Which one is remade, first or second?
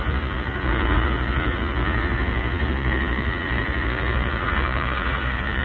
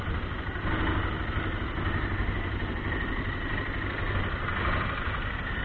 first